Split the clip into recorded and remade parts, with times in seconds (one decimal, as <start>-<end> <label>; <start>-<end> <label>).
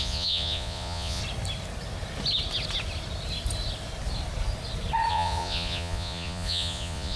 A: 0.0-1.2 remade; 1.2-5.1 recorded; 5.1-7.2 remade